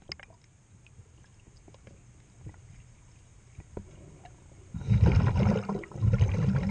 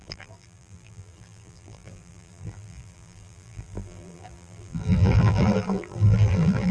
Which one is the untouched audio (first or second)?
first